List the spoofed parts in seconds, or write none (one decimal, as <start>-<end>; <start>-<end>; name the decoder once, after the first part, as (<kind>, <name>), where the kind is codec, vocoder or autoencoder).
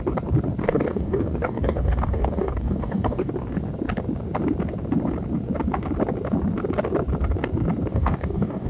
0.6-3.3 (codec, DAC); 7.9-8.7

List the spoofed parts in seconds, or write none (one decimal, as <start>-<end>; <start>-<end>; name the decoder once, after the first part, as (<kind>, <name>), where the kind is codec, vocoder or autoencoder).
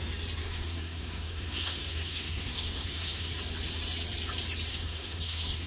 0.4-3.3 (codec, SNAC); 4.7-5.7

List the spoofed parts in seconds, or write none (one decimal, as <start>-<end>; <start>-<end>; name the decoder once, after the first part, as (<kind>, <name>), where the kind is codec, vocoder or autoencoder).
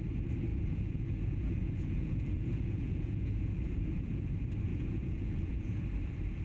0.5-4.3 (vocoder, Vocos); 4.7-5.8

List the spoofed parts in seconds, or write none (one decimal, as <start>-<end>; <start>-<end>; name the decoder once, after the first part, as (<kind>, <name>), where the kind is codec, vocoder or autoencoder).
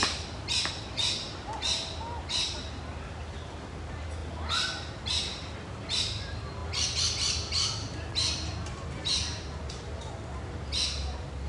none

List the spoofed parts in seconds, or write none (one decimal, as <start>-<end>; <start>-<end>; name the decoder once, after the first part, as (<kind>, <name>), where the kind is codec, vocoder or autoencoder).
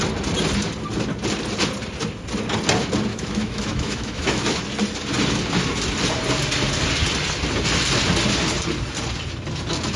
3.1-4.6 (autoencoder, DAC-VAE)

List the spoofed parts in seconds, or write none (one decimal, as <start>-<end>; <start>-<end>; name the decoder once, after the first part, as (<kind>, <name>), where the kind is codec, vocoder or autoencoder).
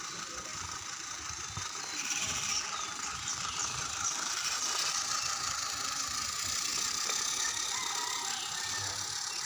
0.5-4.9 (vocoder, BigVGAN v2)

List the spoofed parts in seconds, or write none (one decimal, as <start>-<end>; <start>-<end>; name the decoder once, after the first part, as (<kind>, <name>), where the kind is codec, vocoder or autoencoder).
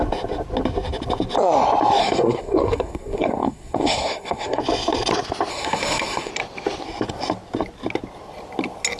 2.0-4.6 (codec, SNAC); 5.5-6.3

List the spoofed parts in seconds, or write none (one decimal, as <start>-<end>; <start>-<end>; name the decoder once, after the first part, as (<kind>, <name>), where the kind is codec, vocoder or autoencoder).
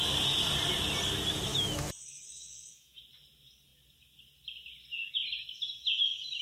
1.5-3.0 (autoencoder, DAC-VAE)